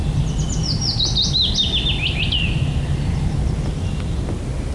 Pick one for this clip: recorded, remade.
recorded